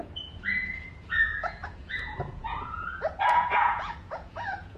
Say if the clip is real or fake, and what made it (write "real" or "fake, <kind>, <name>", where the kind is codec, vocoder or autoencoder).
fake, vocoder, Vocos